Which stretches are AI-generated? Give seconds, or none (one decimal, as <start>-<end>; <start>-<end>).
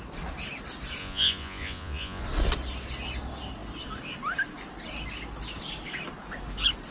1.0-2.2